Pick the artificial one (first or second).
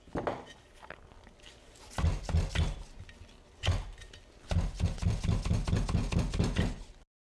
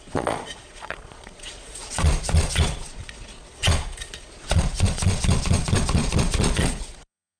second